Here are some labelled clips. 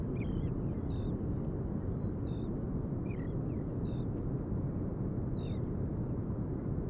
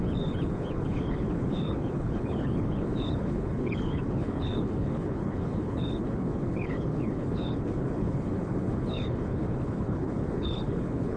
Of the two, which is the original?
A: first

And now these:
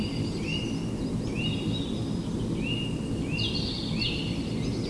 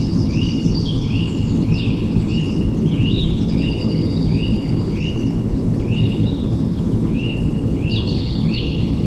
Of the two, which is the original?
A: first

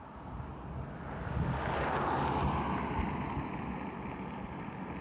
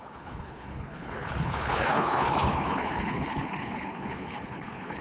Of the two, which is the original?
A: first